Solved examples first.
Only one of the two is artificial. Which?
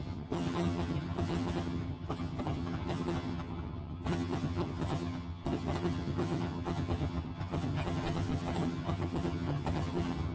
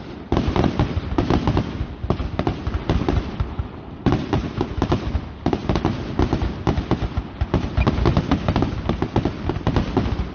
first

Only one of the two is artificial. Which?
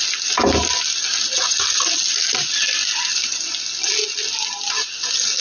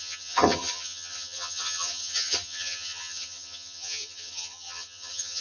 second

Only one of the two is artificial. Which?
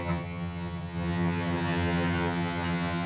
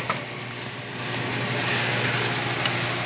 first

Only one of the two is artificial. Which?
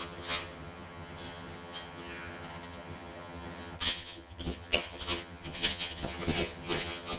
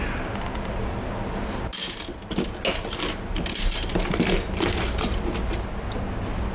first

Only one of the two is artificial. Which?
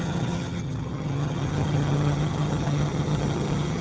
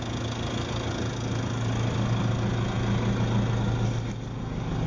first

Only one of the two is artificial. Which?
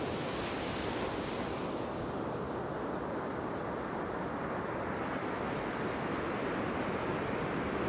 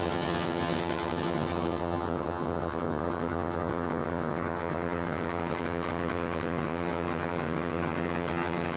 second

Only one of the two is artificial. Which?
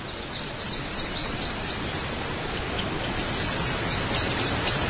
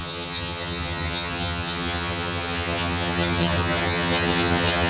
second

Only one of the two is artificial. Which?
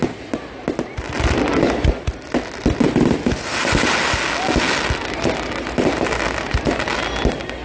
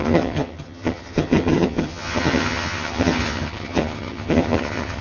second